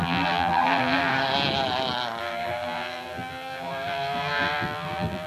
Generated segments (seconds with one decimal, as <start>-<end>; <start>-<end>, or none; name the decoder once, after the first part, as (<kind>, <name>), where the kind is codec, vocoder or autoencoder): 0.0-1.1 (vocoder, BigVGAN v2); 2.2-5.3